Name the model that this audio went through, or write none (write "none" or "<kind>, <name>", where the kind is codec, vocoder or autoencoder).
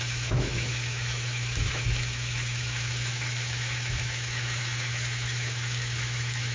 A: autoencoder, DAC-VAE